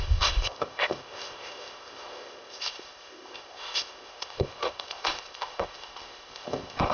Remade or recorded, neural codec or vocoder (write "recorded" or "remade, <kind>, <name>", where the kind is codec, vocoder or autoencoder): remade, codec, ZipCodec